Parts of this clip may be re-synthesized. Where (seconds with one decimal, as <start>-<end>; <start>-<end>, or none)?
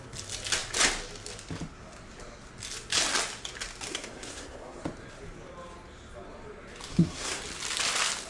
3.9-4.8; 6.9-7.4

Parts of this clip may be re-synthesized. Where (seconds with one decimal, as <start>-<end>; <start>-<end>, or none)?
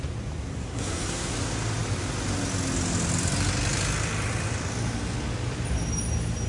0.6-1.3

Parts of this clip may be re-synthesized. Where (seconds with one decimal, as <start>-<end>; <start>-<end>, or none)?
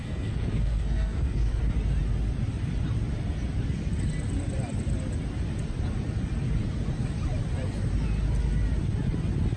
0.0-1.6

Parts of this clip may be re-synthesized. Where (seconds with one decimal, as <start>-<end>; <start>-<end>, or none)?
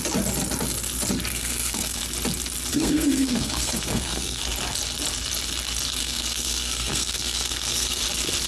1.3-2.0; 2.7-4.4; 6.0-8.0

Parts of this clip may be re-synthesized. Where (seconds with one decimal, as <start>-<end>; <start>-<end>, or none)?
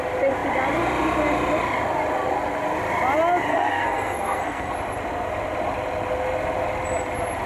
3.5-4.7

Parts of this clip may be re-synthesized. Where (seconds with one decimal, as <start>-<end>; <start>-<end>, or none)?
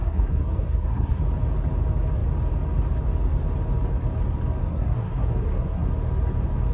0.0-1.2; 4.6-5.9